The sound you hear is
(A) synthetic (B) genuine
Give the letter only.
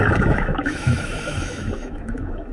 A